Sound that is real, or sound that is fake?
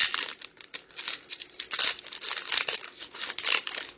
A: real